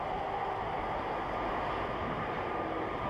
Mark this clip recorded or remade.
recorded